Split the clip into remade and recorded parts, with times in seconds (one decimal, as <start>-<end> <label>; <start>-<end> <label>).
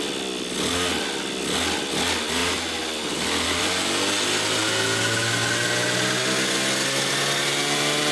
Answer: 0.0-8.1 recorded